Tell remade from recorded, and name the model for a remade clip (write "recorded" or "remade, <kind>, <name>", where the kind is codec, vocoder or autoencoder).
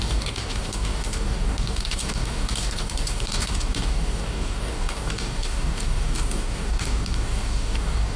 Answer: remade, codec, DAC